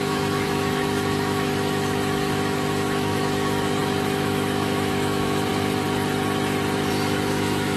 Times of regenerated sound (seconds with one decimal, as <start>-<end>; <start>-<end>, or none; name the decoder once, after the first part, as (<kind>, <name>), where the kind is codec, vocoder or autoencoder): 0.0-5.5 (autoencoder, DAC-VAE); 6.9-7.8